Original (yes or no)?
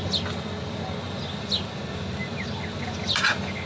yes